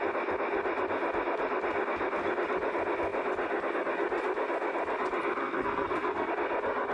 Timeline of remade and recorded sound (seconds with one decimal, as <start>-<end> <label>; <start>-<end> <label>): 0.0-5.4 recorded; 5.4-6.3 remade; 6.3-6.9 recorded